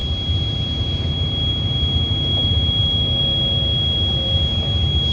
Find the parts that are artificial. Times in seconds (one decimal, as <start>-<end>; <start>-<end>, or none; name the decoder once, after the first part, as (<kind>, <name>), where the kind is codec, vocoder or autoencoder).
none